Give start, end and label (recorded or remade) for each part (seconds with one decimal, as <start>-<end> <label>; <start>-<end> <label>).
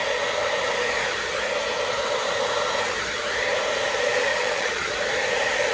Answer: 0.0-4.3 recorded; 4.3-4.9 remade; 4.9-5.7 recorded